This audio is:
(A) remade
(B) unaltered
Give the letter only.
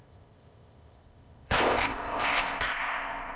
A